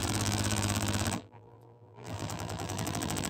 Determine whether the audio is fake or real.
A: fake